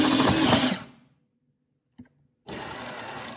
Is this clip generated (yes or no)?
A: no